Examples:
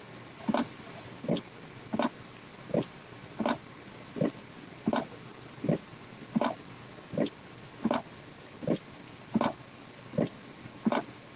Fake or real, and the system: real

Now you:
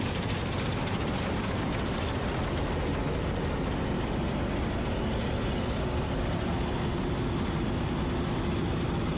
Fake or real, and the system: real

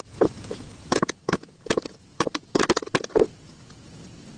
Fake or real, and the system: fake, vocoder, Vocos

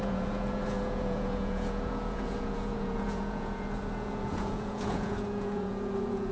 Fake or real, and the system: fake, vocoder, Vocos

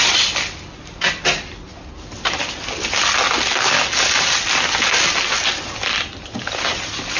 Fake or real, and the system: real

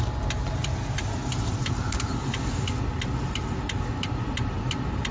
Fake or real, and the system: real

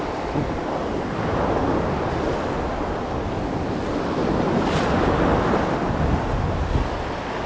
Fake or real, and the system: real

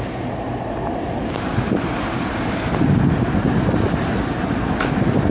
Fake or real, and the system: real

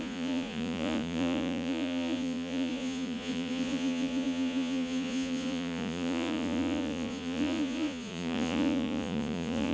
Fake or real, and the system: fake, vocoder, Vocos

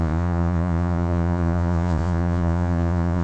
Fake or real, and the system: fake, vocoder, Vocos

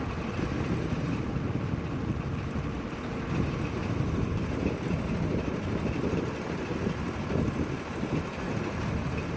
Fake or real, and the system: real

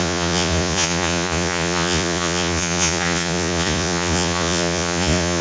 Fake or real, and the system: fake, vocoder, Vocos